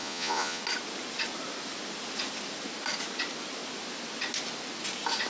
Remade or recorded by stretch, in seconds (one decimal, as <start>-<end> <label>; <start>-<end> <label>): 0.0-0.6 remade; 0.6-5.3 recorded